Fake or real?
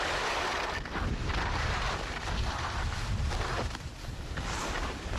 real